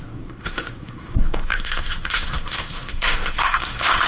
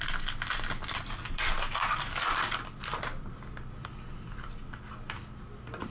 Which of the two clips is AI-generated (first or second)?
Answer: first